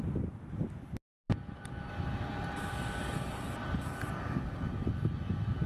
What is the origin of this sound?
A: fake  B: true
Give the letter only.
B